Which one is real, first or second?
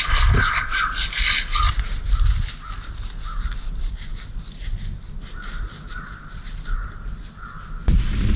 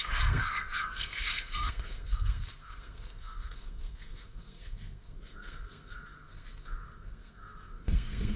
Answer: first